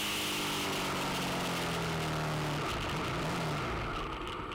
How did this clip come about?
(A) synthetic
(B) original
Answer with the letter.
B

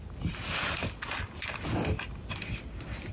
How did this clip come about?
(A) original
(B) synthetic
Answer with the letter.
A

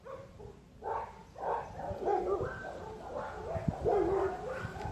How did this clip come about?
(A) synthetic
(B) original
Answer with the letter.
B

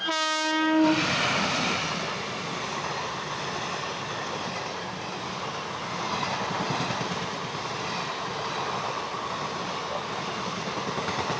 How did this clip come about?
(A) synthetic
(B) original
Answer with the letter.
B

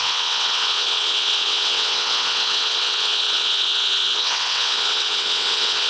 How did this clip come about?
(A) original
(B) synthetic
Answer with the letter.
B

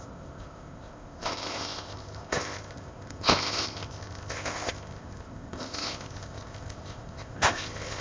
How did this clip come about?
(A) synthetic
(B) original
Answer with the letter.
A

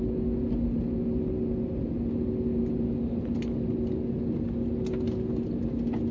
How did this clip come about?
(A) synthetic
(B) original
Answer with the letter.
B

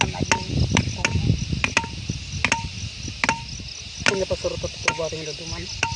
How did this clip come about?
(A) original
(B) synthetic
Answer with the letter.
A